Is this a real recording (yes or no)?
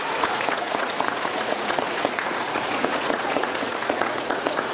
no